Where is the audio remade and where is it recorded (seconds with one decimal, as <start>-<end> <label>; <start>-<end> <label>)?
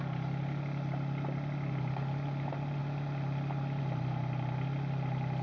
0.0-5.4 recorded